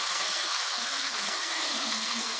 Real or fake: fake